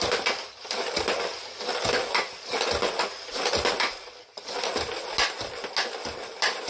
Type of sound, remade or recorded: recorded